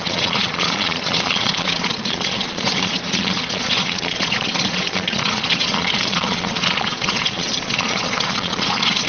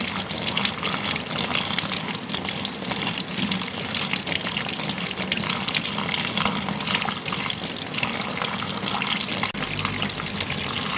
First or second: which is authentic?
second